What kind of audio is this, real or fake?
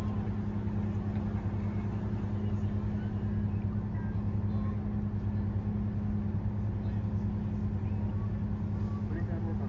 real